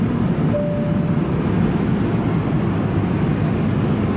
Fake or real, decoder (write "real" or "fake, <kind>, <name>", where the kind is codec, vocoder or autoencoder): real